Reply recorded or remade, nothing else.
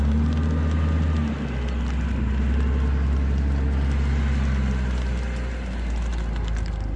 recorded